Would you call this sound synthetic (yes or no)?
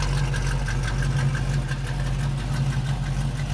no